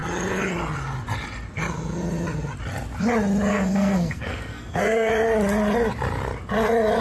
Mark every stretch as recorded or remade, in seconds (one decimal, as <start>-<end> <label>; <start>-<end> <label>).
0.0-3.5 recorded; 3.5-5.1 remade; 5.1-7.0 recorded